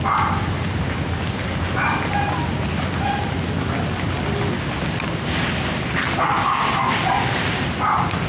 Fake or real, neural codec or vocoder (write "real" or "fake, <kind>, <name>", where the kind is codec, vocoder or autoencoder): real